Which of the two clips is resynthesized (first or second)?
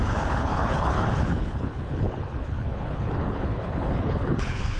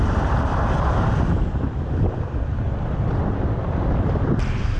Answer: first